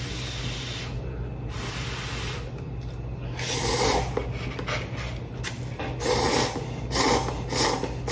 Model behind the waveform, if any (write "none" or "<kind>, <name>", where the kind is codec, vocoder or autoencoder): none